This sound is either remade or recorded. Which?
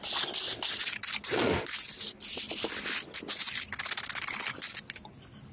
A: recorded